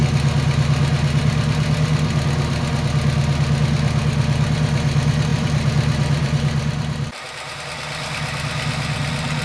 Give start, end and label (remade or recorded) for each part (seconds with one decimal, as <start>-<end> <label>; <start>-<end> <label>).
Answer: 0.0-5.3 recorded; 5.3-7.6 remade; 7.6-9.4 recorded